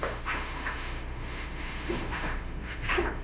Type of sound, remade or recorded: remade